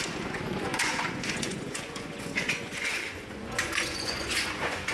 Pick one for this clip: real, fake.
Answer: fake